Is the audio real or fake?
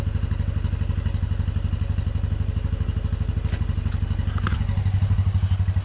real